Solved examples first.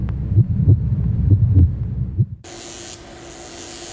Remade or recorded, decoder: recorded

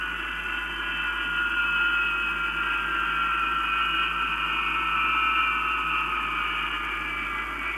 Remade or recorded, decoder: recorded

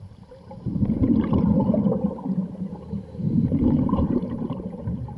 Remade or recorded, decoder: remade, vocoder, BigVGAN v2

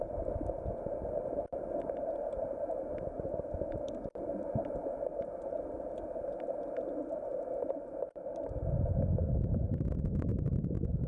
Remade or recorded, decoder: recorded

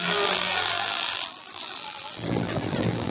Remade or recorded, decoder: remade, vocoder, BigVGAN v2